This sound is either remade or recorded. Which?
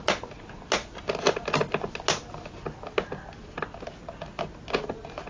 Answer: recorded